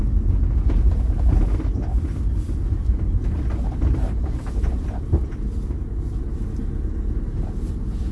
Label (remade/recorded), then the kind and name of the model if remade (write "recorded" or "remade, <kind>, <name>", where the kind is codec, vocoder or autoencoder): recorded